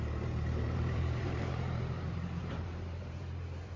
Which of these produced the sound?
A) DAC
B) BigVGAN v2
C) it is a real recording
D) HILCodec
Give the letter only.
B